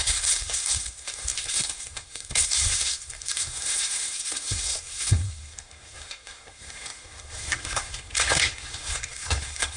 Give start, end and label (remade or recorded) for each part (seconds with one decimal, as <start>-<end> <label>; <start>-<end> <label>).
0.0-9.8 remade